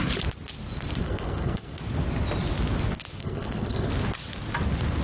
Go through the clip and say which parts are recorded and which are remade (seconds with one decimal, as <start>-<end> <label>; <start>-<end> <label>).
0.0-1.0 recorded; 1.0-1.8 remade; 1.8-3.2 recorded; 3.2-3.9 remade; 3.9-5.0 recorded